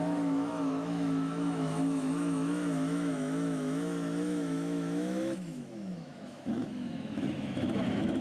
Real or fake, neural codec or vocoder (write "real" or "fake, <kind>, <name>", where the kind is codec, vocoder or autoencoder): fake, autoencoder, DAC-VAE